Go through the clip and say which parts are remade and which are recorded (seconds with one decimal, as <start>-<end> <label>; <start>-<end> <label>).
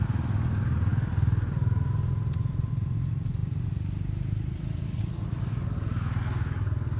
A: 0.0-7.0 recorded